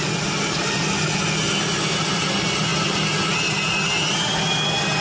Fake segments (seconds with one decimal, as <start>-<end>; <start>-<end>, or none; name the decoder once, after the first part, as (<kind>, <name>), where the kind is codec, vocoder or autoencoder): none